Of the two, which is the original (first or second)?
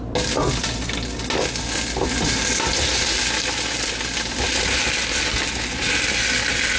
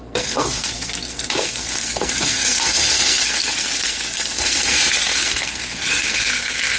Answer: first